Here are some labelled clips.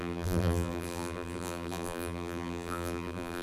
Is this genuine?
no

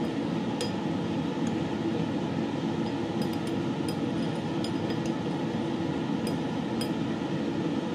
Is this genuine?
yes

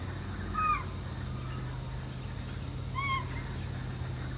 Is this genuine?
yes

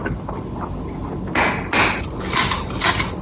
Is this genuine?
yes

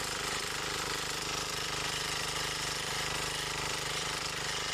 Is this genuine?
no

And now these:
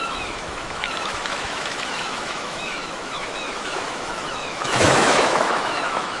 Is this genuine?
no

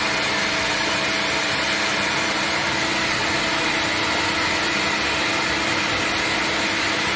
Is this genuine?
yes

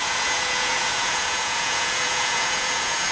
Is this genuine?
no